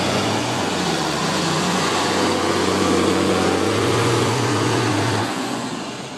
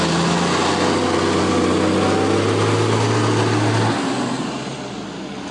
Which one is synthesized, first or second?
first